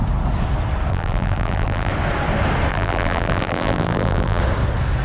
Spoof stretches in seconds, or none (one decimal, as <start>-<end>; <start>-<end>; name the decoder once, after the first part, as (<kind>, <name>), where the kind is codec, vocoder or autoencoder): 0.9-1.9 (vocoder, BigVGAN v2); 2.7-4.4